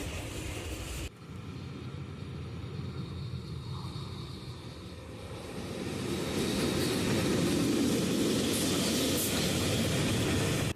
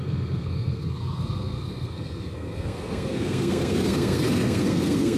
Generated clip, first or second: second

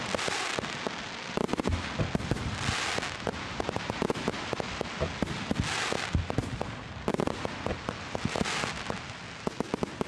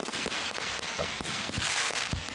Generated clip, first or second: second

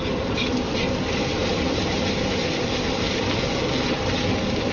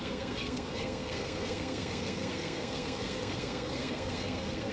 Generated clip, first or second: second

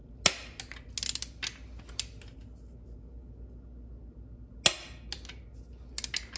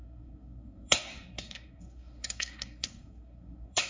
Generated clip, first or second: second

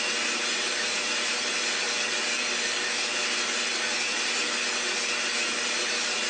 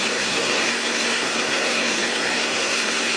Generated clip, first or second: second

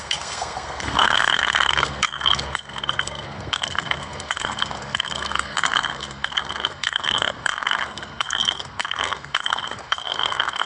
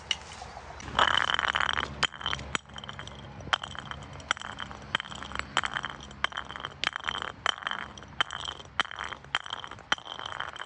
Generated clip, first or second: first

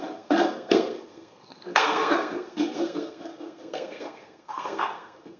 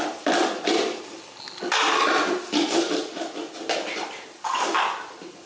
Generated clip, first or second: first